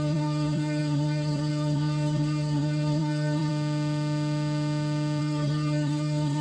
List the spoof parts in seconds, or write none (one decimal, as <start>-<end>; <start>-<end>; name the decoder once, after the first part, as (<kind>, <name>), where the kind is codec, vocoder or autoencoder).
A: 0.0-3.5 (codec, SNAC); 5.2-6.4

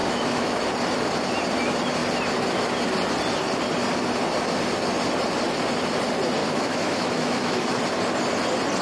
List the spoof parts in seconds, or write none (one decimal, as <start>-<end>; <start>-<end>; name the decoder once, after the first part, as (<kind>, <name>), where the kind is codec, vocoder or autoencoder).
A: 0.0-0.6 (autoencoder, DAC-VAE); 6.4-7.8

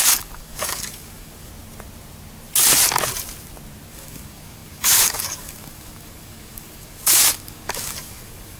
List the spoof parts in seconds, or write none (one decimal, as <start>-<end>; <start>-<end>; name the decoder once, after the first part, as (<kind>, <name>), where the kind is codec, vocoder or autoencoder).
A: 0.0-1.5 (codec, DAC); 3.9-8.6

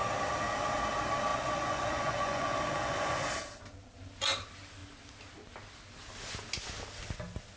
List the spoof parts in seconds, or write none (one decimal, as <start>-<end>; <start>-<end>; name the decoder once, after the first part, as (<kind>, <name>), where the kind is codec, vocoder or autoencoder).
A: 1.3-3.3 (vocoder, Vocos)

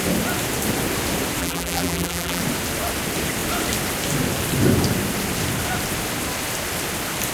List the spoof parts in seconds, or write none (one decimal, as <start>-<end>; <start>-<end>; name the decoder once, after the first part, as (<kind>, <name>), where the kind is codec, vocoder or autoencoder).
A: 1.4-2.4 (vocoder, BigVGAN v2)

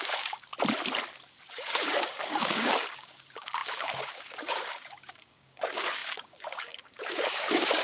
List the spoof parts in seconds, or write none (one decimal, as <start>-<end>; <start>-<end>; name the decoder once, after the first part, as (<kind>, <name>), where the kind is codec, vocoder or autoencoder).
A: 0.0-0.5 (codec, DAC); 1.4-7.8

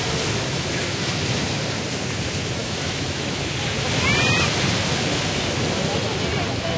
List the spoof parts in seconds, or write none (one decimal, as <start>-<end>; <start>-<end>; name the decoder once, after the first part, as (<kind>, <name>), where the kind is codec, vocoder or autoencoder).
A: 2.6-3.4 (autoencoder, DAC-VAE)